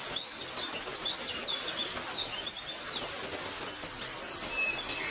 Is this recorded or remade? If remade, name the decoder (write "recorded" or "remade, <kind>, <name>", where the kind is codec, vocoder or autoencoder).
recorded